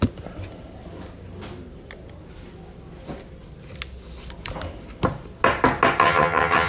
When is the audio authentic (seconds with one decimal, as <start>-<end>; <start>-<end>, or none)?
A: 0.0-6.0